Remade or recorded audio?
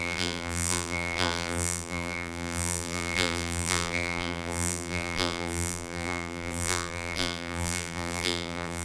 remade